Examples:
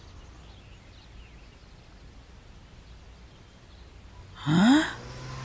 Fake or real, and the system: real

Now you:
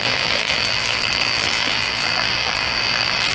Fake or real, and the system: fake, vocoder, BigVGAN v2